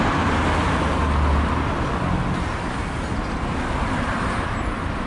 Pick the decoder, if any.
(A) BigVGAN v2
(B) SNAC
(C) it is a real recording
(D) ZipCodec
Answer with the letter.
C